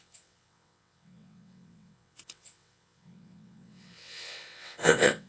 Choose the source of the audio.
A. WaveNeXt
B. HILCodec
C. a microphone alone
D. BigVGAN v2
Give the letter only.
A